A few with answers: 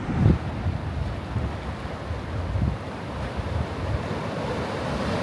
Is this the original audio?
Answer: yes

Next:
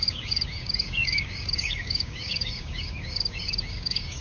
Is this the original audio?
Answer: no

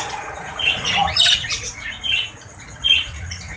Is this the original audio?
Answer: no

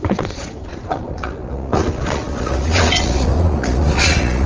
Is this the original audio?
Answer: no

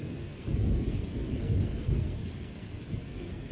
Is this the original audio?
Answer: no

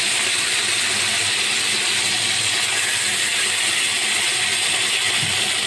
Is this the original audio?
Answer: yes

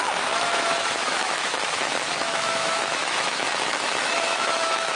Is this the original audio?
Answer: no